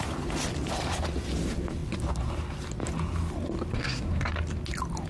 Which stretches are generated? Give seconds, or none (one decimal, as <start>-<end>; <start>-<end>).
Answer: 3.7-4.3